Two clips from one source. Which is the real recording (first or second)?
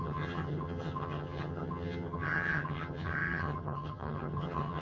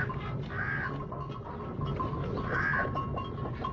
second